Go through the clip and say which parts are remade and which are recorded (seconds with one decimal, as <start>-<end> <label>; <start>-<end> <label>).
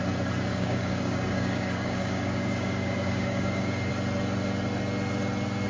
0.0-0.5 recorded; 0.5-3.9 remade; 3.9-5.7 recorded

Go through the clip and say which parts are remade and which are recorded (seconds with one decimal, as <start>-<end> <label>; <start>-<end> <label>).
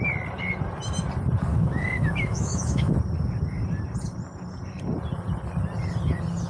0.0-1.5 recorded; 1.5-2.9 remade; 2.9-6.5 recorded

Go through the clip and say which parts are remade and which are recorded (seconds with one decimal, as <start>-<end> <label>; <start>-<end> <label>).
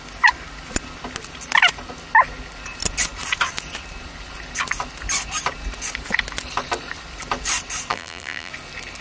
0.0-7.9 recorded; 7.9-8.5 remade; 8.5-9.0 recorded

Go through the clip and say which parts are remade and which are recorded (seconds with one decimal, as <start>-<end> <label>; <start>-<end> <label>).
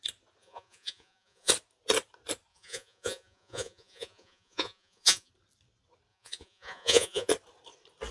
0.0-0.4 recorded; 0.4-1.5 remade; 1.5-2.5 recorded; 2.5-5.3 remade; 5.3-6.1 recorded; 6.1-7.3 remade; 7.3-8.1 recorded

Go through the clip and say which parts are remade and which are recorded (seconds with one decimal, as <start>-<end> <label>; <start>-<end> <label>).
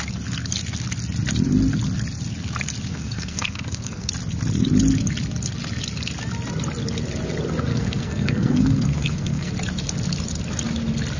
0.0-2.9 recorded; 2.9-4.1 remade; 4.1-7.7 recorded; 7.7-9.5 remade; 9.5-11.2 recorded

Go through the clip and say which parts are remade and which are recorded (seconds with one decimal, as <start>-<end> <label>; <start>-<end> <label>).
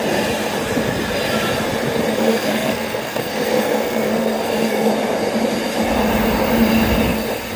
0.0-2.1 recorded; 2.1-4.9 remade; 4.9-7.6 recorded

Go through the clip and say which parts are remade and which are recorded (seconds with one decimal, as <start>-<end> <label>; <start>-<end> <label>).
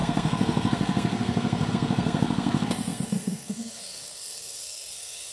0.0-5.3 remade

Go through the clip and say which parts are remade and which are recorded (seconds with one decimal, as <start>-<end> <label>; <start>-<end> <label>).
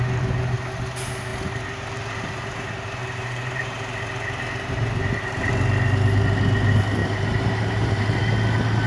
0.0-3.0 recorded; 3.0-5.5 remade; 5.5-7.0 recorded; 7.0-8.3 remade; 8.3-8.9 recorded